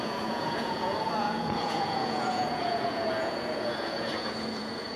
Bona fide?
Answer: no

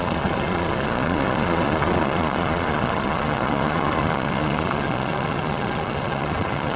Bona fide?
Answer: no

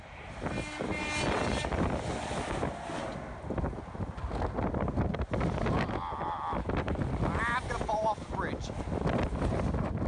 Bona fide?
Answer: yes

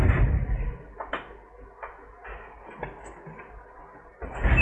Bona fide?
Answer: yes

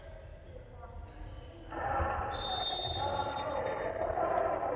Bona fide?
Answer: yes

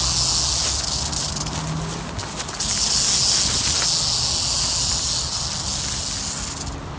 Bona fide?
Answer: yes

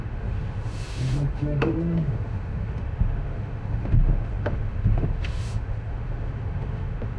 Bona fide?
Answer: no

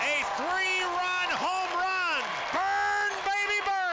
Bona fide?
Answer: yes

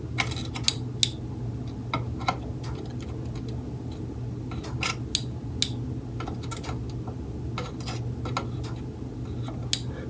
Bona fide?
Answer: yes